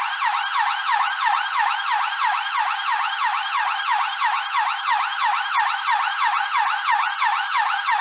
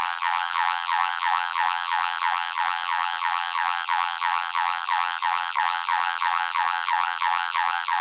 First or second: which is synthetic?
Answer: second